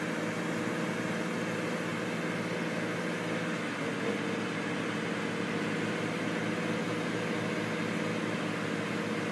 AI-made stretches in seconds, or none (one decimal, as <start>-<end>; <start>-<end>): none